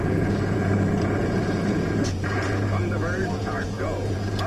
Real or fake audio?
fake